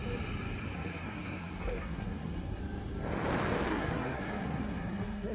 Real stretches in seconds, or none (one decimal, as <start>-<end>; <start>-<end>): 0.0-0.6; 2.6-3.7